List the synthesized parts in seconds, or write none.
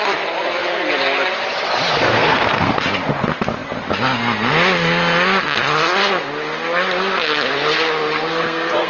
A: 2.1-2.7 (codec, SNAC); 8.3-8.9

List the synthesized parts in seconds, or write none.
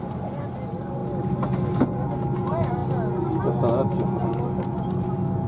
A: none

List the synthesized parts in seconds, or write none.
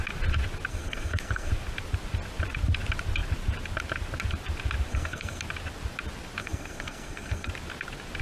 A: 0.7-1.5 (codec, SNAC); 4.9-5.4; 6.4-7.5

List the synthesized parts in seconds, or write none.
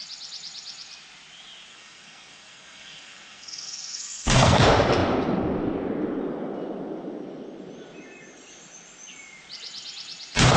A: 1.7-4.6 (codec, SNAC)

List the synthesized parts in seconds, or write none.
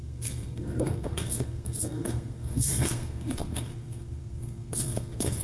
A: 0.0-5.4 (codec, SNAC)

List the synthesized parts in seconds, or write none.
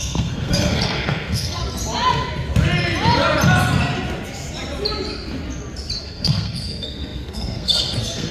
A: 0.0-1.6 (codec, SNAC); 6.0-8.3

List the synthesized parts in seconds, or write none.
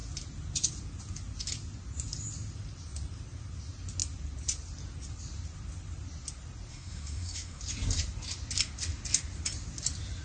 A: 6.7-7.6 (codec, SNAC)